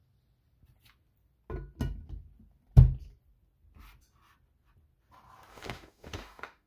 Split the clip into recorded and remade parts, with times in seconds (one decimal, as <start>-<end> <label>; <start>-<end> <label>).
0.0-5.5 recorded; 5.5-6.7 remade